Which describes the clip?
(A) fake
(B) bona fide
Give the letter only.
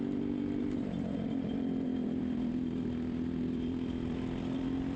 A